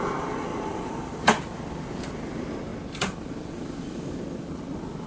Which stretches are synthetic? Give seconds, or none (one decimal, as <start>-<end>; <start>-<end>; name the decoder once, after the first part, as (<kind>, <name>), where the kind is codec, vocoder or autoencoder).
0.5-1.0 (vocoder, BigVGAN v2)